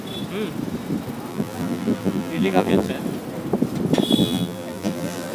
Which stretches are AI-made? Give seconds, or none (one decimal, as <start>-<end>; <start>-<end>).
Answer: 1.3-2.9; 4.2-5.3